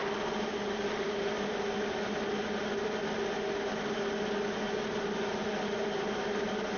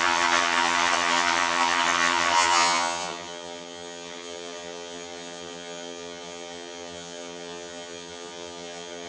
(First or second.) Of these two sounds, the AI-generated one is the second